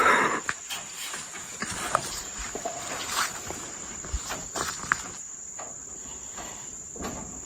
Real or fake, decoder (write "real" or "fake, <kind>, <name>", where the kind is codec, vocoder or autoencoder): fake, vocoder, BigVGAN v2